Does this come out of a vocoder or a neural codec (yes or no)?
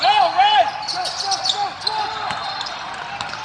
no